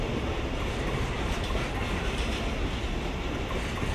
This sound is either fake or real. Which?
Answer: real